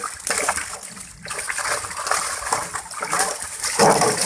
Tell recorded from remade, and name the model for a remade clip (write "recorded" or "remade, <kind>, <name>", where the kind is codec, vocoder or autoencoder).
recorded